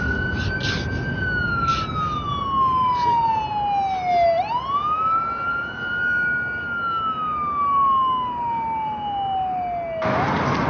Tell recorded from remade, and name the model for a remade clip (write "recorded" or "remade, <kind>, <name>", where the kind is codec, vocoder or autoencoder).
recorded